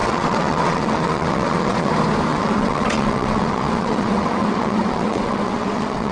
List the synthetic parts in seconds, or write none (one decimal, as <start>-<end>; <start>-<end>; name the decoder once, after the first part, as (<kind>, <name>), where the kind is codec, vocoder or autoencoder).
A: 0.0-1.9 (vocoder, WaveNeXt); 2.3-6.1